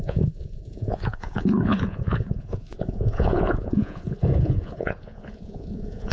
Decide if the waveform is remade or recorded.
remade